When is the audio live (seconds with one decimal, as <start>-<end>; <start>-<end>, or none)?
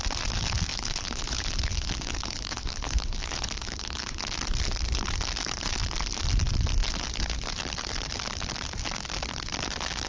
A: 0.0-0.7; 4.2-10.1